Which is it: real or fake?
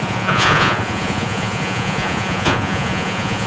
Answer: fake